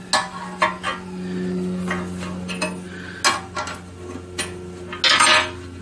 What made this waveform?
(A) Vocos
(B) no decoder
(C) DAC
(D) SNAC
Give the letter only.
B